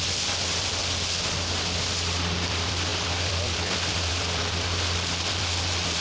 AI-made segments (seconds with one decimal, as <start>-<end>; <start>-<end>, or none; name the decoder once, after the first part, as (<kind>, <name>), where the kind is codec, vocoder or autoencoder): 0.0-0.8 (vocoder, BigVGAN v2); 2.5-6.0